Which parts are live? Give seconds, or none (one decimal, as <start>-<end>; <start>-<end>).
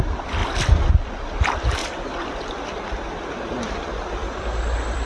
0.0-0.4; 0.9-1.8; 2.5-4.2